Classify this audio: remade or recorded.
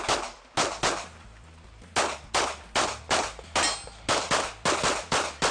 recorded